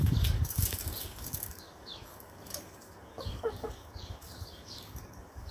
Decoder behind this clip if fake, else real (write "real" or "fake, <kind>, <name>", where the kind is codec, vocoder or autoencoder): fake, codec, DAC